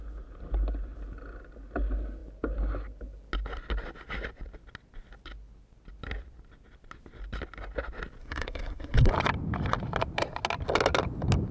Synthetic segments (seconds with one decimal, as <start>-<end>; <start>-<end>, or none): 8.2-9.1